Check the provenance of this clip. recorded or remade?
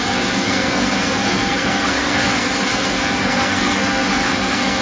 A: remade